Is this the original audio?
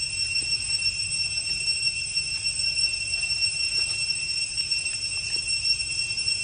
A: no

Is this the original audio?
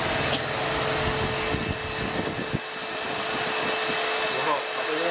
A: yes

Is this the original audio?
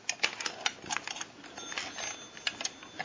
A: yes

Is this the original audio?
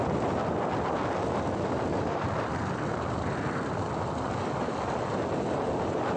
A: yes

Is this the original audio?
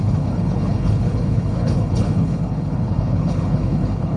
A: no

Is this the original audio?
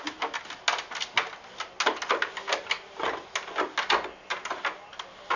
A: yes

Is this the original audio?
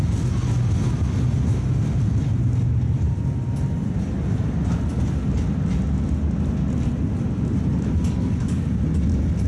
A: yes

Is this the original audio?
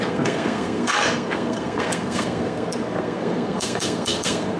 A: no